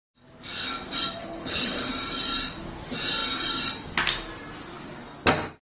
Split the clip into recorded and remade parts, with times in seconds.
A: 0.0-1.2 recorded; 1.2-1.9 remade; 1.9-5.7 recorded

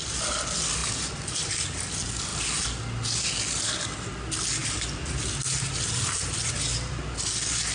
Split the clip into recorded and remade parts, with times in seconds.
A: 0.0-7.7 recorded

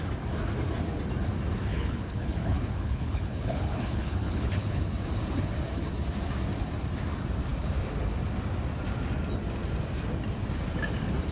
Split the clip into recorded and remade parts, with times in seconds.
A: 0.0-1.7 recorded; 1.7-4.8 remade; 4.8-11.3 recorded

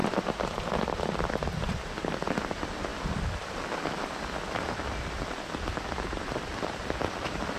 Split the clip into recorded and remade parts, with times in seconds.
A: 0.0-1.0 recorded; 1.0-2.9 remade; 2.9-5.9 recorded; 5.9-7.6 remade

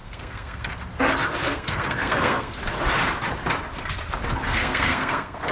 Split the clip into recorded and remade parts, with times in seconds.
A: 0.0-0.7 remade; 0.7-1.5 recorded; 1.5-2.6 remade; 2.6-4.5 recorded; 4.5-5.5 remade

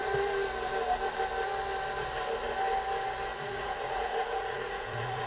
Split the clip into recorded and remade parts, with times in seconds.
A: 0.0-3.3 recorded; 3.3-5.3 remade

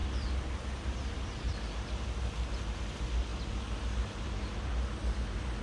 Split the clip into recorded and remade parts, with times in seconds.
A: 0.0-5.6 recorded

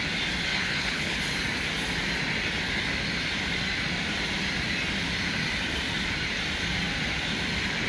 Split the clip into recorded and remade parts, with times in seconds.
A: 0.0-0.5 recorded; 0.5-1.2 remade; 1.2-7.9 recorded